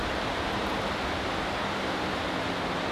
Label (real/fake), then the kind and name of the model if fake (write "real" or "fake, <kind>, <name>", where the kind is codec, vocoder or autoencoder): real